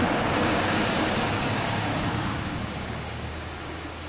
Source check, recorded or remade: remade